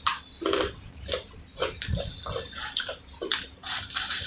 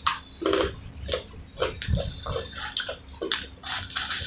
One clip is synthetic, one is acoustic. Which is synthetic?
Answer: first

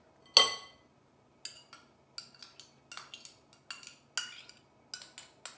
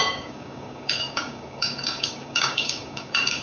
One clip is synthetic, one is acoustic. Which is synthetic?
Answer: second